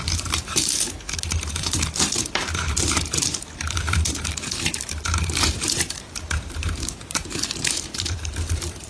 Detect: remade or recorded remade